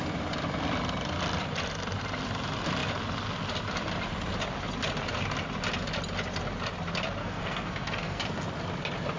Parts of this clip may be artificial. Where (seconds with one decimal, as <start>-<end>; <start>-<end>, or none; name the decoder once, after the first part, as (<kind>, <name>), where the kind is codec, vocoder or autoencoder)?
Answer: 7.2-8.2 (codec, SNAC)